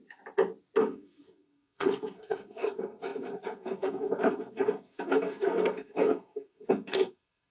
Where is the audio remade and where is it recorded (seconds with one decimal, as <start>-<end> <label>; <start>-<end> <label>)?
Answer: 0.0-0.8 recorded; 0.8-7.5 remade